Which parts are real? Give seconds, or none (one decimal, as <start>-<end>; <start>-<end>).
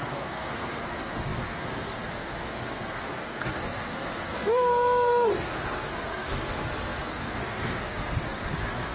none